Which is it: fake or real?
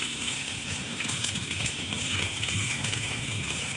fake